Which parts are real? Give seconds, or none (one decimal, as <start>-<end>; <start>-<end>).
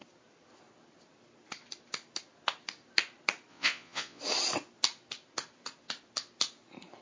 0.0-3.5; 4.2-7.0